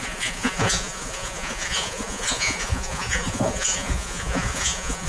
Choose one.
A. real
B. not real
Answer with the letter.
B